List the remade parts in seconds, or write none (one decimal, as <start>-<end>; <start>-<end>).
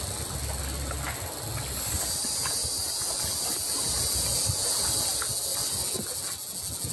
none